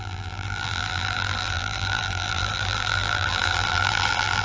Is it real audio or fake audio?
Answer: fake